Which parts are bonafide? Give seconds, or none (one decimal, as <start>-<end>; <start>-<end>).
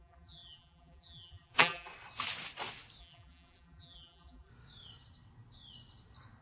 1.9-3.0; 4.5-6.4